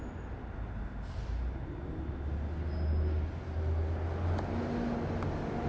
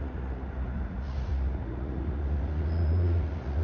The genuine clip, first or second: first